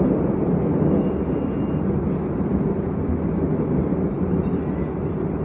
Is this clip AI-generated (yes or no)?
no